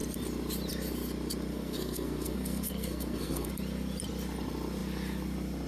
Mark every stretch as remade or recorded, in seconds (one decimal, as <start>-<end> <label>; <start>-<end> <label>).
0.0-1.5 recorded; 1.5-3.5 remade; 3.5-5.7 recorded